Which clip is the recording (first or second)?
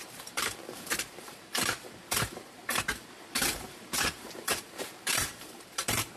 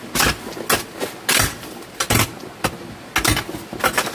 second